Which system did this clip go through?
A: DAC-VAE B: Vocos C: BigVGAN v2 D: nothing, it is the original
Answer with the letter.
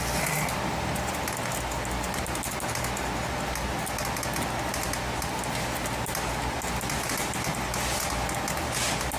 D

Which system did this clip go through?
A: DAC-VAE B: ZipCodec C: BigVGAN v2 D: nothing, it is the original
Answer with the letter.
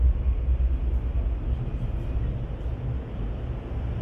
D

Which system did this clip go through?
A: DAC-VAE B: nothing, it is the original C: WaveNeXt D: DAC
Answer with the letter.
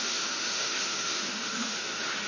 A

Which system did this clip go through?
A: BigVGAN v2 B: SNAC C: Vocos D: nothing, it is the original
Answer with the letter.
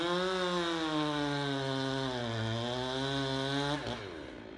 D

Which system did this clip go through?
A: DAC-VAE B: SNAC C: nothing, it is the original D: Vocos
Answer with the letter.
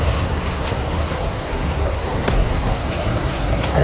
B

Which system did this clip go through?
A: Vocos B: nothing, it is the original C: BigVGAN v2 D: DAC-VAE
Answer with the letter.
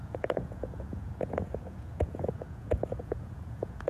A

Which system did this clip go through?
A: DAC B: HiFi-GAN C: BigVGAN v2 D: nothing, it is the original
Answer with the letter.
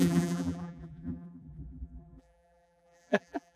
C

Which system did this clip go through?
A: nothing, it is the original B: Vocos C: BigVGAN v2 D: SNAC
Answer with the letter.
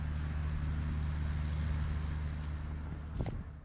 A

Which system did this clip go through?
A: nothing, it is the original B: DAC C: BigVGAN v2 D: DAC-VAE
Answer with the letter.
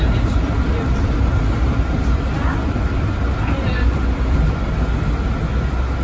A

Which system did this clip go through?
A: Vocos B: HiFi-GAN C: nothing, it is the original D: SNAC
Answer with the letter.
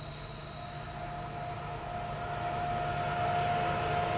C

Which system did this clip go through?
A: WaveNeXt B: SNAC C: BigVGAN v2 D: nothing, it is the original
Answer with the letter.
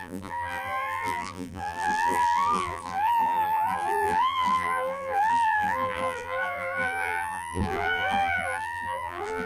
C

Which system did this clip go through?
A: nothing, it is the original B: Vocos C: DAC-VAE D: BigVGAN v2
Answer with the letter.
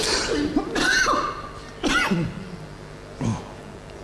A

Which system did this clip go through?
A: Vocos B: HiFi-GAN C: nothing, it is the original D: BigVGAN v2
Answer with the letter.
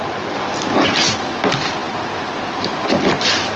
C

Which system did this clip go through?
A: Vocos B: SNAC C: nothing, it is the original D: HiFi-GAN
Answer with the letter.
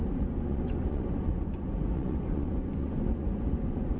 A